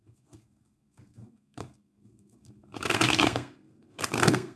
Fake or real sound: fake